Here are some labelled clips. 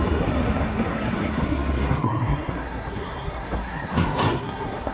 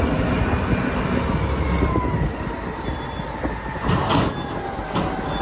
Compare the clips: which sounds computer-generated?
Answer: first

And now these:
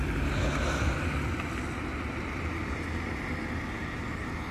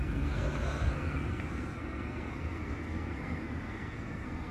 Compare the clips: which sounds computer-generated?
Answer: second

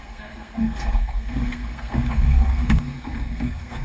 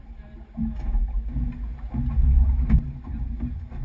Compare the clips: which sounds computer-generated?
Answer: first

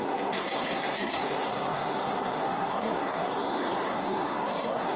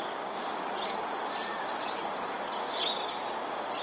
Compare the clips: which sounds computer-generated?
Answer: first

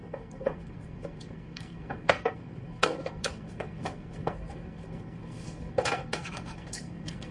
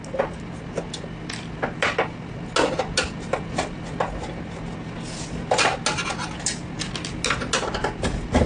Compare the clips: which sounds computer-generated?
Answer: first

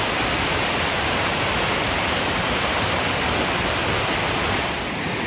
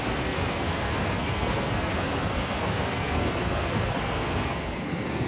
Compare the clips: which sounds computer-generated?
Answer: second